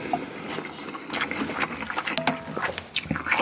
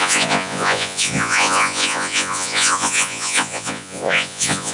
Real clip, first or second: first